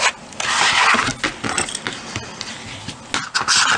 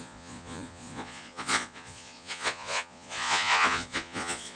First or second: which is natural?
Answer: first